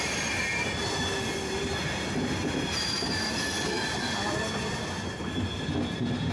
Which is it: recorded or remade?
recorded